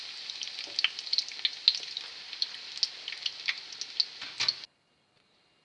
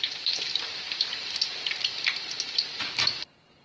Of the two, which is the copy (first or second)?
second